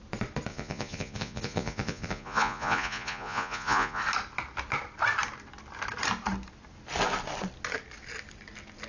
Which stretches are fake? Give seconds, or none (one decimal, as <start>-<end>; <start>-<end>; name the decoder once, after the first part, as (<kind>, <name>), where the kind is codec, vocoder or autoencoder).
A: 0.5-4.0 (vocoder, Vocos)